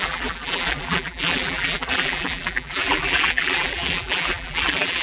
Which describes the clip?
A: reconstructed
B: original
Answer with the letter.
A